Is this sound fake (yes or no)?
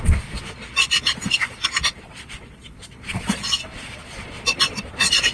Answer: yes